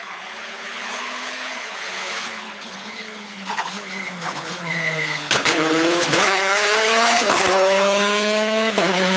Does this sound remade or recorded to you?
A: remade